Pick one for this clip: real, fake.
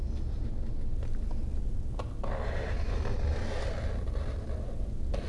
real